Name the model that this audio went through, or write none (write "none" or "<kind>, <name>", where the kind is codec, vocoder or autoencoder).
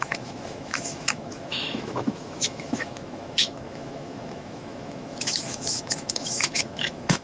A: autoencoder, DAC-VAE